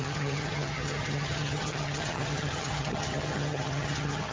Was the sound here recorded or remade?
remade